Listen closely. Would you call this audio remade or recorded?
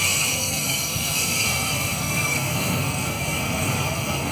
remade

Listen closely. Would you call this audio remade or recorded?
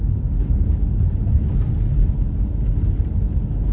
recorded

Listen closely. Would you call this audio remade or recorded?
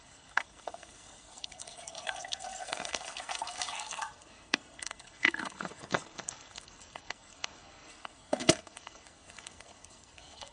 remade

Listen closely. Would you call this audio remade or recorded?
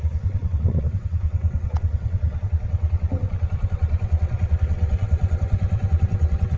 remade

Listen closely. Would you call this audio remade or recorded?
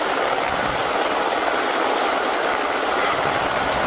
recorded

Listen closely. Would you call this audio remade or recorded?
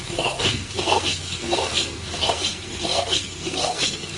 remade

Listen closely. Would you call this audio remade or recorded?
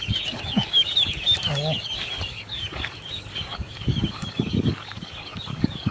remade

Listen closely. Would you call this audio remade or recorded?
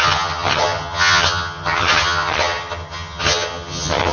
remade